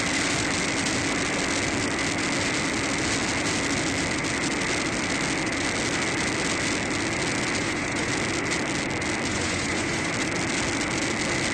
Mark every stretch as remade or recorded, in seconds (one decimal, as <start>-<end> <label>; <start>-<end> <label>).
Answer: 0.0-7.6 recorded; 7.6-8.1 remade; 8.1-9.3 recorded; 9.3-10.1 remade; 10.1-11.5 recorded